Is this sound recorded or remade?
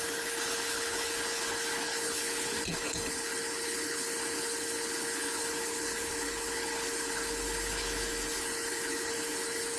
remade